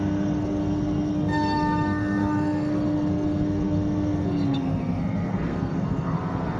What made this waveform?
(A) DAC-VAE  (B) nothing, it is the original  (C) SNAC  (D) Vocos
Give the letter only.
C